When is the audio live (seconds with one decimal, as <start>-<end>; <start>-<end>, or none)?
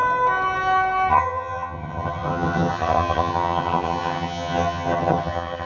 0.0-1.1